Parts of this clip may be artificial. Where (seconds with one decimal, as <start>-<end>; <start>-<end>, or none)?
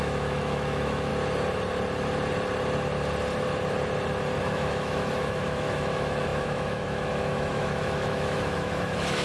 0.0-1.1; 4.4-9.2